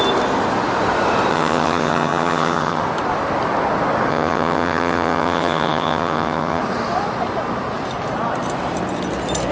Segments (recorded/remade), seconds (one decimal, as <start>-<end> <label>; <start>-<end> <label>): 0.0-1.3 recorded; 1.3-2.8 remade; 2.8-4.1 recorded; 4.1-6.6 remade; 6.6-9.5 recorded